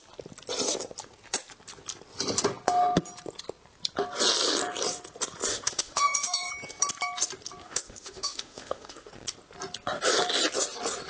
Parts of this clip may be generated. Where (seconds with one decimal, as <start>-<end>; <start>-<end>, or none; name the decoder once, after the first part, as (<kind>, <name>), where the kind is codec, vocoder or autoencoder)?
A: 5.5-6.5 (autoencoder, DAC-VAE); 7.6-9.1